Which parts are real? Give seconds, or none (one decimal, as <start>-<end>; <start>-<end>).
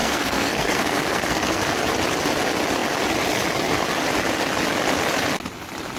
1.8-6.0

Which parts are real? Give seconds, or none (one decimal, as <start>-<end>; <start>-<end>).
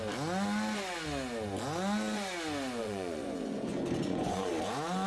0.0-2.8; 4.5-5.1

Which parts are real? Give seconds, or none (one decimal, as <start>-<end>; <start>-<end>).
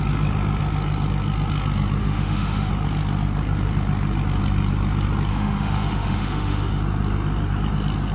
0.0-2.0; 2.7-5.3; 6.8-8.1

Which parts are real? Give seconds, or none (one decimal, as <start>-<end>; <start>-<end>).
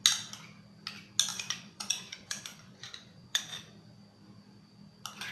0.0-1.3; 3.4-5.3